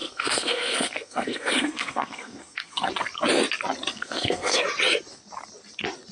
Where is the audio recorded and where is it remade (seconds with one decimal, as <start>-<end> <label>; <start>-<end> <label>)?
0.0-2.9 remade; 2.9-3.9 recorded; 3.9-4.6 remade; 4.6-6.1 recorded